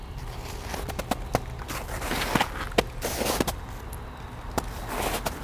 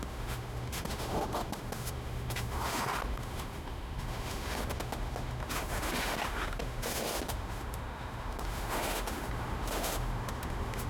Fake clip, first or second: second